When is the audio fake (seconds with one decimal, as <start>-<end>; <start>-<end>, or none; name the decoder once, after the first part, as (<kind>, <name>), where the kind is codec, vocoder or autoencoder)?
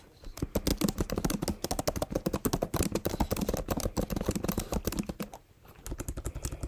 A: none